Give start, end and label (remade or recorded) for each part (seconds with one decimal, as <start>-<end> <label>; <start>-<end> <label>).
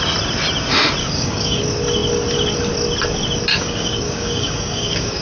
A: 0.0-1.0 recorded; 1.0-1.6 remade; 1.6-3.5 recorded; 3.5-5.2 remade